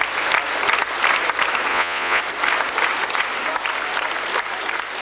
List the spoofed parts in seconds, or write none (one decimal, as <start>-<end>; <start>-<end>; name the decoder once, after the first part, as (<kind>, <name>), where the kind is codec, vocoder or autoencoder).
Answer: 1.7-2.2 (vocoder, Vocos)